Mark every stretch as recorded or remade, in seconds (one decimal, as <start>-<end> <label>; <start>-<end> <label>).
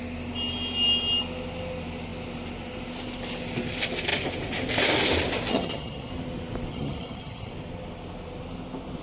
0.0-5.5 recorded; 5.5-6.1 remade; 6.1-6.7 recorded; 6.7-7.5 remade; 7.5-9.0 recorded